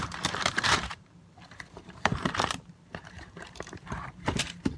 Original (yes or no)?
no